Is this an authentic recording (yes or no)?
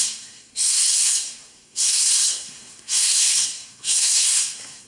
no